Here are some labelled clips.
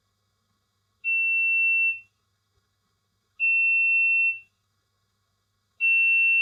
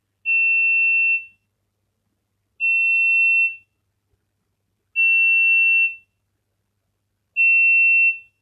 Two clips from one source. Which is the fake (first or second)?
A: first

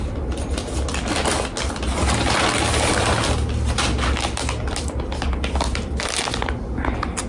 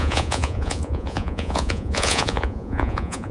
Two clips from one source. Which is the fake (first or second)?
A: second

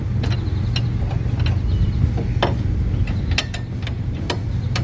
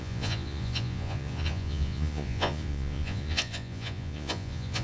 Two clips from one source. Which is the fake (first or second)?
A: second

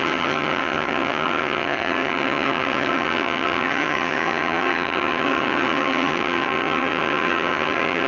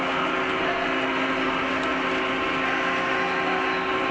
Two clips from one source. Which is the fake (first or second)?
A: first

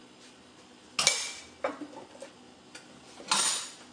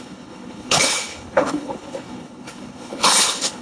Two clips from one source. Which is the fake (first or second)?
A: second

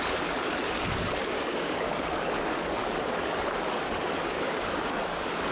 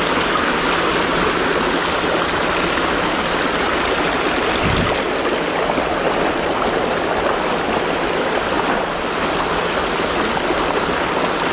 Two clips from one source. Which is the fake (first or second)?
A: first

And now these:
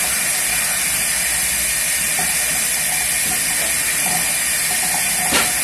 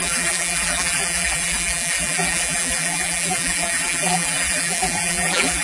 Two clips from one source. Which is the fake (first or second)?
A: second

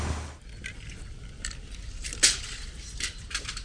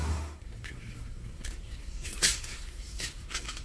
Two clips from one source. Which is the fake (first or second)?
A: second